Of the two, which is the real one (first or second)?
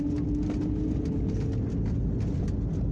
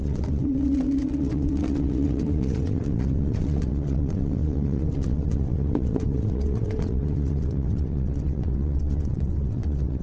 first